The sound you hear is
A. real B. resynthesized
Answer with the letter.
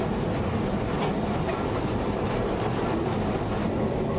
A